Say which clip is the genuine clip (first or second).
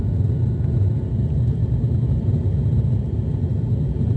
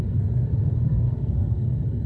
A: first